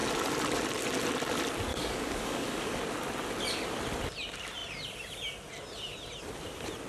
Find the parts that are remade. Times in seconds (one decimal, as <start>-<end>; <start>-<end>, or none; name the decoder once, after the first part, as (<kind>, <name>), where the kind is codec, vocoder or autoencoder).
1.7-2.8 (codec, DAC)